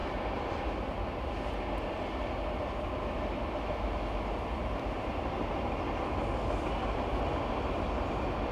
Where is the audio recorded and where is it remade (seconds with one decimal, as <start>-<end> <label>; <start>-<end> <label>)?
0.0-8.5 recorded